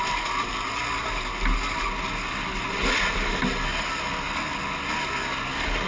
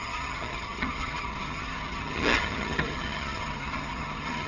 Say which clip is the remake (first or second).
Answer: second